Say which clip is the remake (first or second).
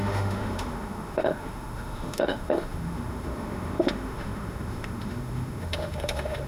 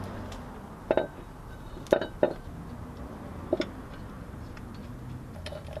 first